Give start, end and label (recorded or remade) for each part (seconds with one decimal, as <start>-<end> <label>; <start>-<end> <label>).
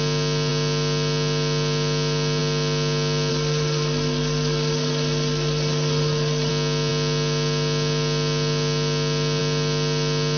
0.0-3.3 recorded; 3.3-6.5 remade; 6.5-10.4 recorded